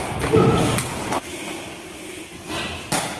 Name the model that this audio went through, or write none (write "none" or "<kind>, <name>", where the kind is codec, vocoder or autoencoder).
none